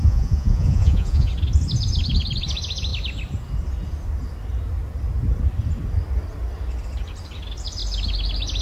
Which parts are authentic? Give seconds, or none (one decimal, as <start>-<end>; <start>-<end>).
1.3-8.6